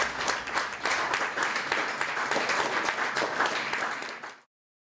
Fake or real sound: real